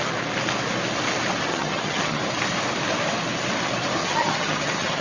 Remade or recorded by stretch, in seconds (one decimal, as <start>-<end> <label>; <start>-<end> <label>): 0.0-1.5 recorded; 1.5-2.2 remade; 2.2-4.0 recorded; 4.0-5.0 remade